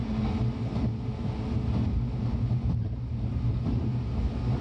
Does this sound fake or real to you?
real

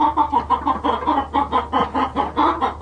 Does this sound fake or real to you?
real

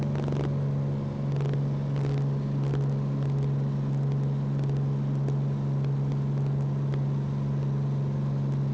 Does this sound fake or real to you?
real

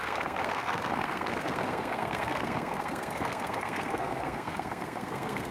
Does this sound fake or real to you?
fake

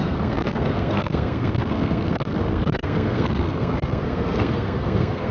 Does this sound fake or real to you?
fake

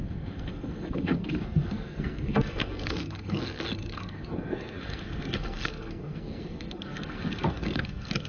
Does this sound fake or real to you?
fake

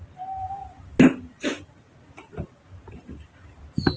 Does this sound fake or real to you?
real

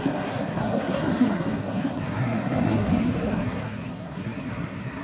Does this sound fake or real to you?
fake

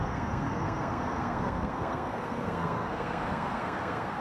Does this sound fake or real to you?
fake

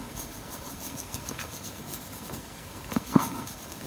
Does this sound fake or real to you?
fake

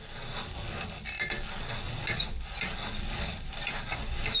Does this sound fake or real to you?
real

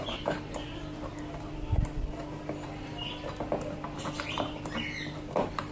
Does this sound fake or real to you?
real